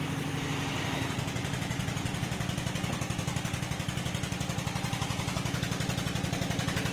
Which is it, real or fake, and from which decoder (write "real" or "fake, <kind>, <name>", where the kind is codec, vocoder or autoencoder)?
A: real